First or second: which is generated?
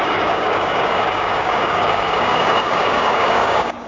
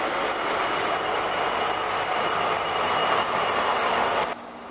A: first